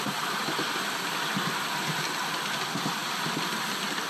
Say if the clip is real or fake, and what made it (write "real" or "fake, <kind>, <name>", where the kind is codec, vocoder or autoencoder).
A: real